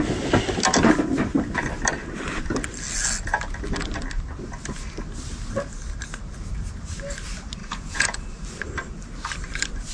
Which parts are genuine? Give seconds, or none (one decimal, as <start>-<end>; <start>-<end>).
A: 0.0-7.6; 8.2-9.9